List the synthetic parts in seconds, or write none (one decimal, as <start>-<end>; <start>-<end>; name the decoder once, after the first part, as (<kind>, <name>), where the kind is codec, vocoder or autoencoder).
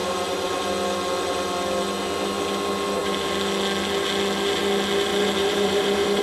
0.0-0.6 (vocoder, BigVGAN v2); 5.1-6.2